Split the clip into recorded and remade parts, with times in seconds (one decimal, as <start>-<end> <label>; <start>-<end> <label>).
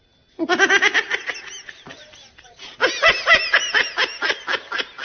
0.0-5.0 recorded